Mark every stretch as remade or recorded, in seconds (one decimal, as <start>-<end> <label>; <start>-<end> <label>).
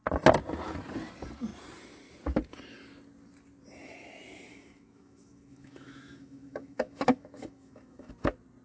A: 0.0-4.5 recorded; 4.5-8.1 remade; 8.1-8.6 recorded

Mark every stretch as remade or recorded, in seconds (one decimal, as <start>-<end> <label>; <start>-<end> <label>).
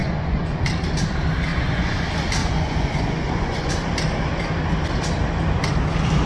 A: 0.0-0.6 remade; 0.6-1.5 recorded; 1.5-2.0 remade; 2.0-2.4 recorded; 2.4-3.7 remade; 3.7-6.3 recorded